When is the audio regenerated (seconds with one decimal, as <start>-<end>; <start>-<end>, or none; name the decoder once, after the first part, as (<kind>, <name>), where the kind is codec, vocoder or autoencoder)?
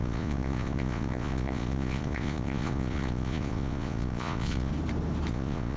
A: 0.0-4.7 (vocoder, Vocos); 5.3-5.8